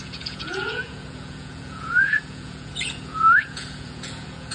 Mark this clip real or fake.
fake